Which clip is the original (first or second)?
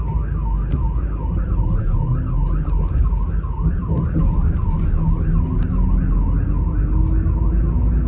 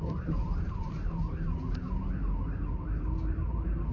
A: first